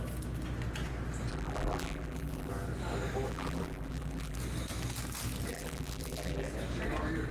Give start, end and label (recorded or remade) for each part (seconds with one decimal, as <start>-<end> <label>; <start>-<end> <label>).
0.0-1.3 recorded; 1.3-2.5 remade; 2.5-3.3 recorded; 3.3-4.4 remade; 4.4-5.5 recorded; 5.5-6.5 remade; 6.5-7.3 recorded